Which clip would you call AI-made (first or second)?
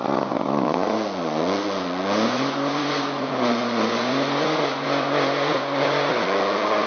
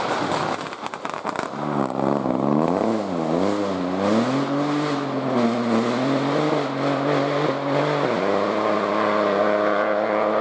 first